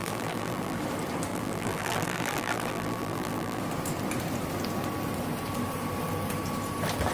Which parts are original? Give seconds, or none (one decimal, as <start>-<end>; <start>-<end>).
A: 0.8-1.3; 3.6-7.1

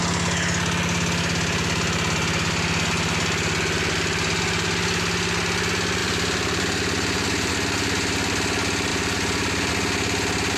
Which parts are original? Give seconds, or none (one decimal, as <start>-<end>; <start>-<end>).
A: 0.0-6.0; 7.5-8.9; 9.7-10.6

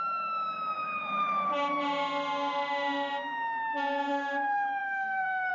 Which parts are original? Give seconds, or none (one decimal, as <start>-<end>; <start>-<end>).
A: 0.0-4.8

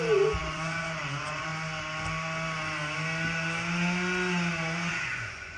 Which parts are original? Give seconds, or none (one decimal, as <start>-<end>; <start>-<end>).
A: 1.5-4.9

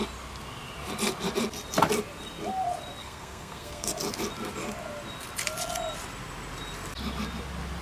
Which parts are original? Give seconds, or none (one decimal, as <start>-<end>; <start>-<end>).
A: 0.0-3.0; 3.9-7.8

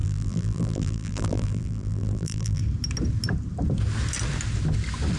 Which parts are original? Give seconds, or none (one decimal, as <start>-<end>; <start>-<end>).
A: 2.6-5.2

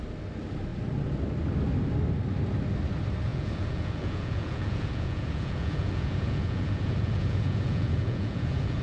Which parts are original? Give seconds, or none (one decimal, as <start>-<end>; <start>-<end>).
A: 0.0-3.3